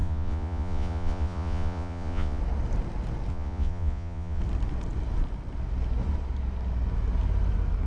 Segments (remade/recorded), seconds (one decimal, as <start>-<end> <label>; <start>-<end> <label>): 0.0-2.4 remade; 2.4-3.3 recorded; 3.3-4.4 remade; 4.4-7.9 recorded

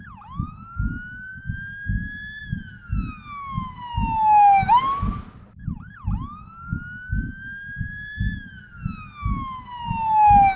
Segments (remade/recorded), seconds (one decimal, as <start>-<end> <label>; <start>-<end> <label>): 0.0-10.6 recorded

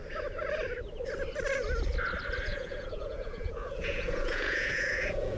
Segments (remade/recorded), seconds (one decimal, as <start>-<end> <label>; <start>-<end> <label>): 0.0-2.5 recorded; 2.5-5.4 remade